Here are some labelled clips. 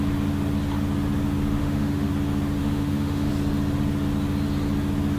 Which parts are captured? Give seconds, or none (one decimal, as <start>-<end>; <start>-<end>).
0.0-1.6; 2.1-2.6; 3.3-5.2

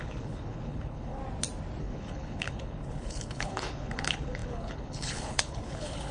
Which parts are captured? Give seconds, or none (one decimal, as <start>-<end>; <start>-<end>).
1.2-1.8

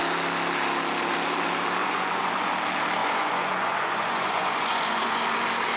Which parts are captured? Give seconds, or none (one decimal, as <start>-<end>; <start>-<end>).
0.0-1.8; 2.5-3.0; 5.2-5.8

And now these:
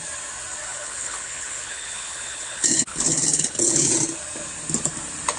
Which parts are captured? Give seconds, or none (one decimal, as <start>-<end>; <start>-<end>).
0.0-0.7; 3.9-5.4

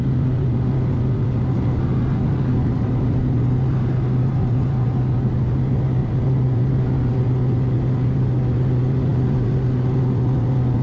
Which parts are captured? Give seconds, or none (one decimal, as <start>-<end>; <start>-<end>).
0.0-2.6; 5.3-6.0; 7.2-10.8

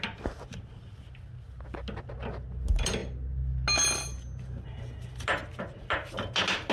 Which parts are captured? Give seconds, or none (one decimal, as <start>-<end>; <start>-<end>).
0.0-6.7

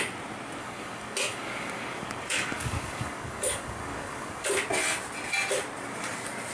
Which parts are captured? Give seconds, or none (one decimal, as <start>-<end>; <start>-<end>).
0.0-0.6; 4.5-6.5

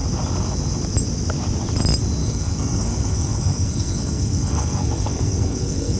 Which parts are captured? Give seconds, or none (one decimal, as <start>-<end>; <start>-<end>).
0.0-2.2